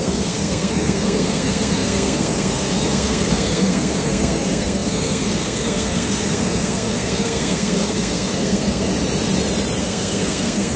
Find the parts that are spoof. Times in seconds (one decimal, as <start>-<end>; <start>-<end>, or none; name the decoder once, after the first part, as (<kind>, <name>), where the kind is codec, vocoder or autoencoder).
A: 0.0-8.9 (codec, SNAC); 9.8-10.8